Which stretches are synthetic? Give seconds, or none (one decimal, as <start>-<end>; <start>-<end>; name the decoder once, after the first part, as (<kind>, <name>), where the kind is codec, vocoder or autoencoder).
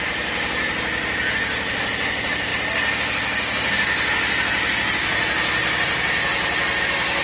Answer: none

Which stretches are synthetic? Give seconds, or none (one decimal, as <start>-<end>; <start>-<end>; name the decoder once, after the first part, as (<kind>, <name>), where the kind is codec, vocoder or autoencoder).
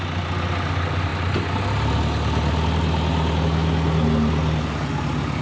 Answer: none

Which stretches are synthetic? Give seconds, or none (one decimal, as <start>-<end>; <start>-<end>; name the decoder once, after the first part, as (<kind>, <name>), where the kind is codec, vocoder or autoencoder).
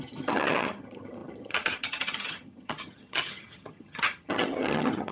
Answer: 0.0-5.1 (vocoder, HiFi-GAN)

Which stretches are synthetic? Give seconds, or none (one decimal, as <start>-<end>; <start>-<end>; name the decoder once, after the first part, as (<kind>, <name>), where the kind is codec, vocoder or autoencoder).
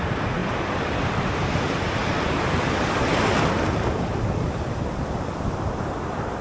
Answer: none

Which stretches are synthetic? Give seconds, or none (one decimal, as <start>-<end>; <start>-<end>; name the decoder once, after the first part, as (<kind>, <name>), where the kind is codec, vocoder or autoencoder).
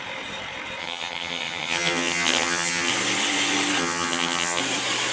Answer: 0.8-2.9 (vocoder, HiFi-GAN); 3.8-4.6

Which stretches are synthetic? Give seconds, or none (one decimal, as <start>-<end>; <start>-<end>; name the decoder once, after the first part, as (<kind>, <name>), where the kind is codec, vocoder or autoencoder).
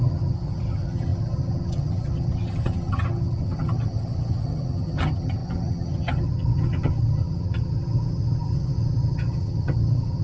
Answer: 0.0-10.2 (vocoder, HiFi-GAN)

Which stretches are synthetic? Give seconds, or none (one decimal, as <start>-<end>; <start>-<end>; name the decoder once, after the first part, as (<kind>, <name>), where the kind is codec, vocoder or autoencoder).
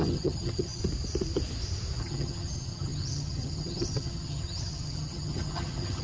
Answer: 0.0-0.8 (vocoder, HiFi-GAN); 2.0-6.0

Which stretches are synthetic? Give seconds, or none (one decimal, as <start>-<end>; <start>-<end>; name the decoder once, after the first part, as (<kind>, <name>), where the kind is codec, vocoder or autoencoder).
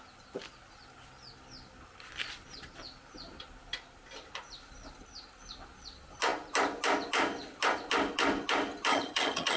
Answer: 8.9-9.6 (vocoder, HiFi-GAN)